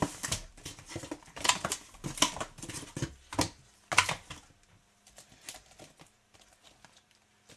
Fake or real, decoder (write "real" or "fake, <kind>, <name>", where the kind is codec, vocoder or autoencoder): real